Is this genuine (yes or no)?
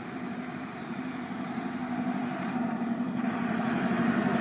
no